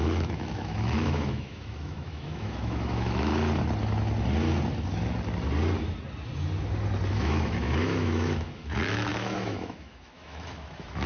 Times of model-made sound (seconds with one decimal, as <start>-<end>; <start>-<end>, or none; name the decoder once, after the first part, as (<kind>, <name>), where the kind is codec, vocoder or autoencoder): 0.0-3.3 (autoencoder, DAC-VAE); 7.1-11.1